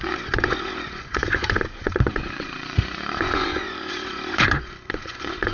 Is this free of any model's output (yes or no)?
no